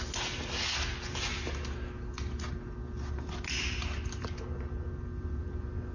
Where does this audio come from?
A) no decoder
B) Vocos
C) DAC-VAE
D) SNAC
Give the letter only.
A